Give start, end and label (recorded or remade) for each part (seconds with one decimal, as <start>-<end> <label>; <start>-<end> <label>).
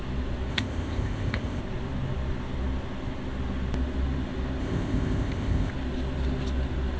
0.0-0.5 recorded; 0.5-1.6 remade; 1.6-4.6 recorded; 4.6-5.7 remade; 5.7-7.0 recorded